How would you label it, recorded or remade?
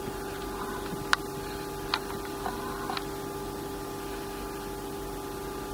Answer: recorded